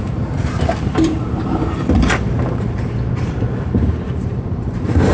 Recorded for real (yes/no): no